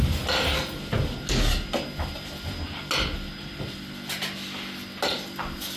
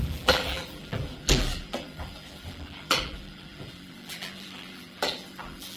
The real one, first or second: first